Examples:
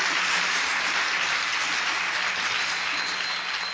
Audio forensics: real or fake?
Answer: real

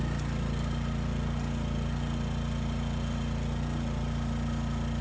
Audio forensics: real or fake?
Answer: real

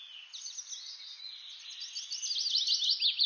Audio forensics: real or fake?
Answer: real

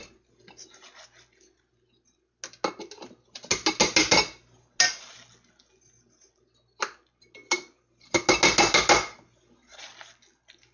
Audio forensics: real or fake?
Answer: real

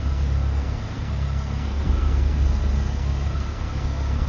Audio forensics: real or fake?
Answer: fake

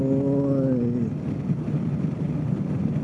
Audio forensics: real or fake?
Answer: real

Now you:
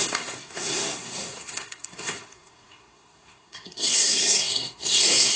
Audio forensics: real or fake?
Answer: fake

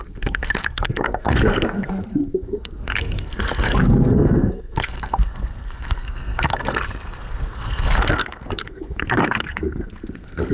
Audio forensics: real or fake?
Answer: fake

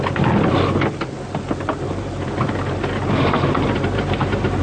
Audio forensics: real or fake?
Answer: real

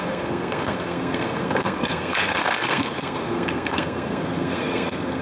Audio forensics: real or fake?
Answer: fake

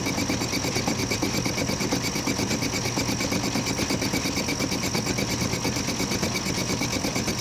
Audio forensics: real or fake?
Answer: real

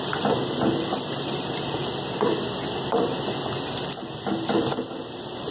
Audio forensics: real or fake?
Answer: real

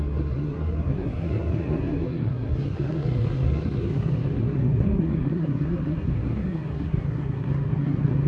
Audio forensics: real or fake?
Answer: fake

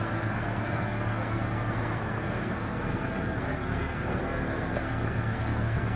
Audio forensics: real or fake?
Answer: fake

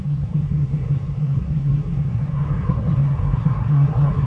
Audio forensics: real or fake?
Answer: fake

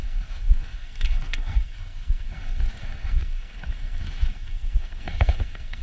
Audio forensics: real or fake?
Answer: fake